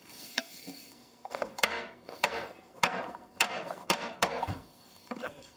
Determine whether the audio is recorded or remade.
remade